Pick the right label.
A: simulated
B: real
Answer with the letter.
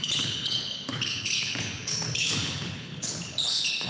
A